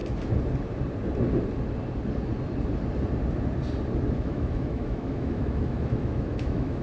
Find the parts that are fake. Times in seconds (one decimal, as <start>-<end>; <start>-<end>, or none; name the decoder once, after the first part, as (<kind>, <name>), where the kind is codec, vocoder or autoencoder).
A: 4.1-6.8 (autoencoder, DAC-VAE)